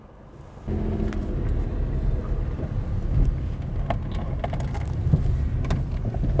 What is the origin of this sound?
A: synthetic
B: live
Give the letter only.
B